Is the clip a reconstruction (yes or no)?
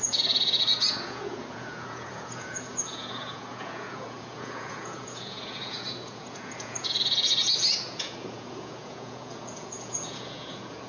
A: yes